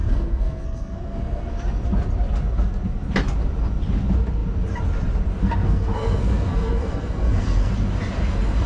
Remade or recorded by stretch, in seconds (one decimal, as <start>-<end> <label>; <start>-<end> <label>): 0.0-1.5 remade; 1.5-5.4 recorded; 5.4-7.7 remade; 7.7-8.7 recorded